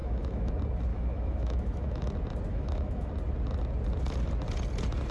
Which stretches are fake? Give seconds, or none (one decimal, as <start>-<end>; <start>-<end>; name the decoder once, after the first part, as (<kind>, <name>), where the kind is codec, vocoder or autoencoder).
0.0-0.5 (autoencoder, DAC-VAE); 0.9-2.1; 2.5-3.1